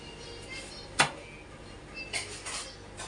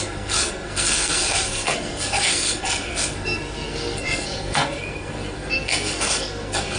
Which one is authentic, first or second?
first